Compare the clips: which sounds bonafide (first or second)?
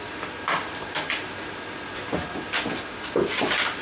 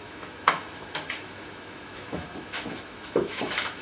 first